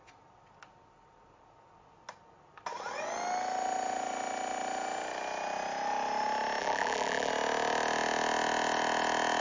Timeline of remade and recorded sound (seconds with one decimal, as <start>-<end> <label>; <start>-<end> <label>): 0.0-6.6 recorded; 6.6-7.3 remade; 7.3-9.4 recorded